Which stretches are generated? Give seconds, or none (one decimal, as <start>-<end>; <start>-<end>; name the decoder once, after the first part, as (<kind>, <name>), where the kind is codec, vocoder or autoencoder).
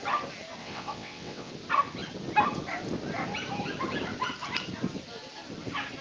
0.6-1.5 (vocoder, WaveNeXt)